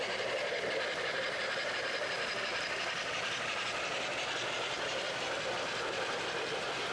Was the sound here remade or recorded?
remade